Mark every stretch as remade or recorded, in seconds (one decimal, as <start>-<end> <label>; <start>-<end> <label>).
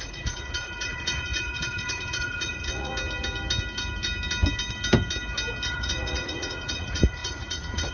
0.0-2.9 remade; 2.9-5.7 recorded; 5.7-7.9 remade